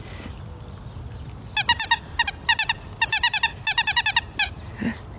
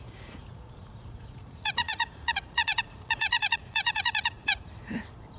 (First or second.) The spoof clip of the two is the second